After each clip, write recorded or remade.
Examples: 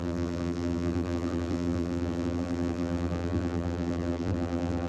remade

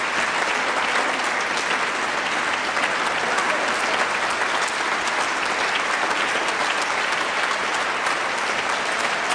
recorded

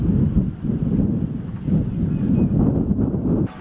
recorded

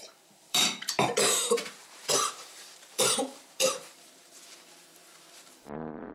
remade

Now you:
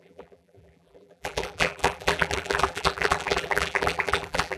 remade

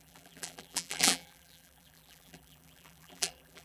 remade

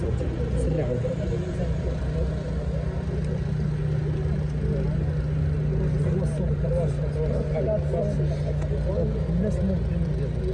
recorded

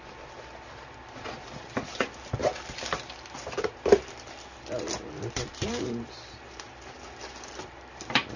remade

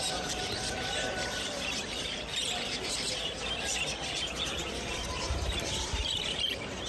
remade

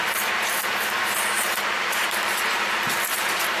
remade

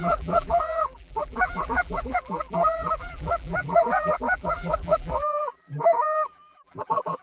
remade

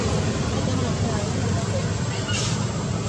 recorded